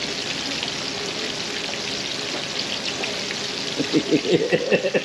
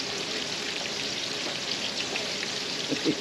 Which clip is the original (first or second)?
first